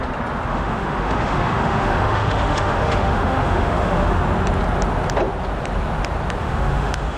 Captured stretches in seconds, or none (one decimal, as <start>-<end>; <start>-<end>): 0.0-0.5; 4.2-6.4